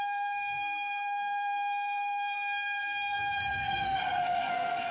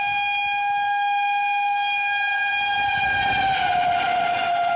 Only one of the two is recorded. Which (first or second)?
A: second